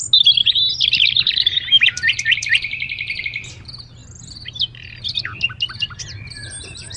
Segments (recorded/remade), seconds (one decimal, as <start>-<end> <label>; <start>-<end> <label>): 0.0-0.4 recorded; 0.4-3.2 remade; 3.2-6.4 recorded; 6.4-7.0 remade

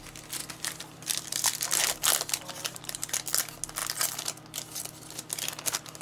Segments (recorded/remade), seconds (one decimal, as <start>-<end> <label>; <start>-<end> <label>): 0.0-0.4 recorded; 0.4-3.1 remade; 3.1-6.0 recorded

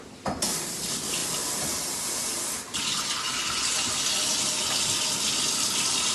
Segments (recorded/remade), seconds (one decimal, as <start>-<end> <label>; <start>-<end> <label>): 0.0-1.2 remade; 1.2-4.8 recorded; 4.8-6.1 remade

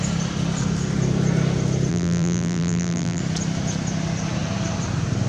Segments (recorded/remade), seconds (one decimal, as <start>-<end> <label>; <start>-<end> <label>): 0.0-1.9 recorded; 1.9-3.2 remade; 3.2-5.3 recorded

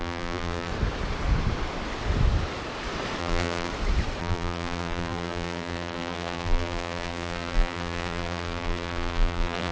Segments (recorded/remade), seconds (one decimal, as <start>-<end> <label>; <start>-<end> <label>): 0.0-0.7 remade; 0.7-3.2 recorded; 3.2-3.7 remade; 3.7-4.2 recorded; 4.2-9.7 remade

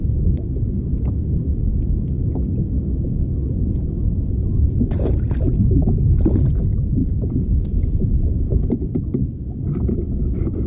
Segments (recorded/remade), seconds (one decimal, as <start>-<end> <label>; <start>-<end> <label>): 0.0-0.9 remade; 0.9-4.8 recorded; 4.8-10.7 remade

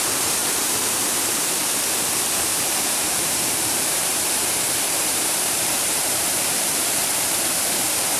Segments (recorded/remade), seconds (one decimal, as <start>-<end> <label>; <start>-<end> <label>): 0.0-0.4 recorded; 0.4-1.6 remade; 1.6-2.5 recorded; 2.5-7.0 remade; 7.0-8.2 recorded

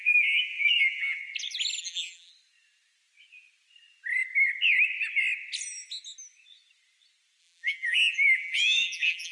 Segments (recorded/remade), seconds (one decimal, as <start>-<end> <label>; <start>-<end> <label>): 0.0-1.2 remade; 1.2-1.8 recorded; 1.8-2.3 remade; 2.3-7.4 recorded; 7.4-9.3 remade